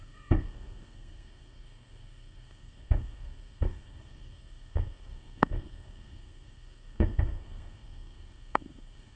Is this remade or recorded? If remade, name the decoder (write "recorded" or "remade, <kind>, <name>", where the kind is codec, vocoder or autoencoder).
remade, codec, SNAC